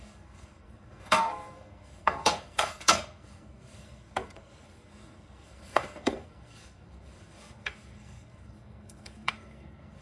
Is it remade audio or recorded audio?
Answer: remade